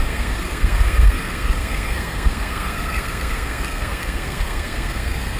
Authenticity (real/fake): fake